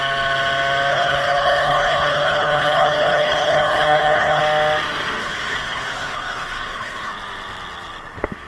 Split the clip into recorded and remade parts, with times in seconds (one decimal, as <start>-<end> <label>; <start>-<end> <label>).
0.0-0.9 recorded; 0.9-4.4 remade; 4.4-5.2 recorded; 5.2-7.1 remade; 7.1-8.5 recorded